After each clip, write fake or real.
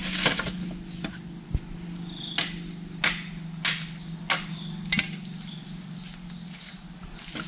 real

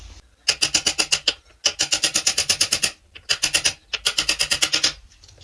real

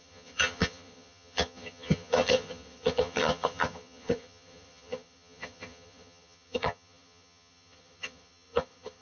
fake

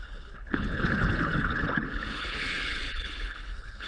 fake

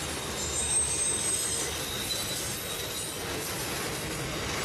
real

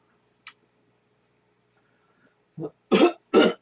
real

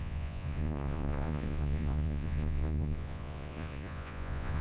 fake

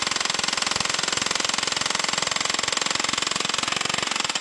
real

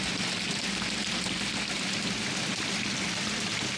real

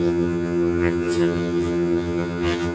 fake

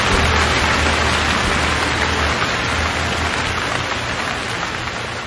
real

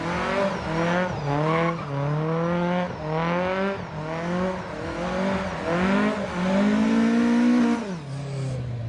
real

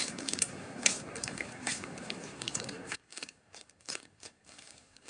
fake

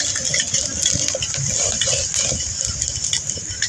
real